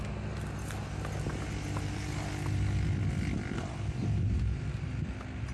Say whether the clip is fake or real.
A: real